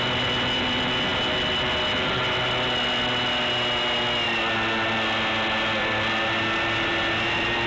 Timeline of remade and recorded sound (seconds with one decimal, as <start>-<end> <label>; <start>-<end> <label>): 0.0-5.8 recorded; 5.8-7.7 remade